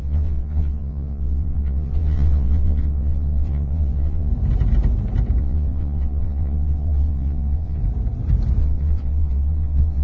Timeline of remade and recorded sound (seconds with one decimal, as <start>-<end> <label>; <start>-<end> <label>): 0.0-4.3 remade; 4.3-5.4 recorded; 5.4-7.8 remade; 7.8-8.6 recorded; 8.6-10.0 remade